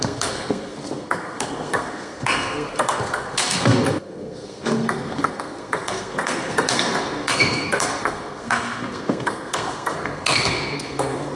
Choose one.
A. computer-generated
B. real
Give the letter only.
A